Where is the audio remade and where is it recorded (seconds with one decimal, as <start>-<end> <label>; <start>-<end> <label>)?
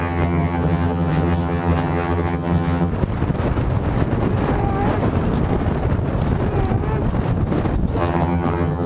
0.0-2.9 remade; 2.9-8.0 recorded; 8.0-8.9 remade